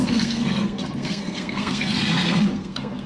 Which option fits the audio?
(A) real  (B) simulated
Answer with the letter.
B